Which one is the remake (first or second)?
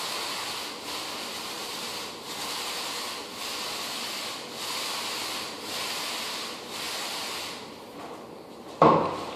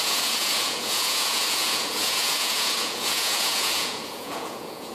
second